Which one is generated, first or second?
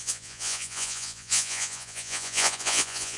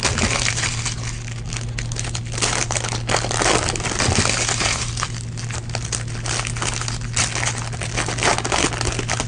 first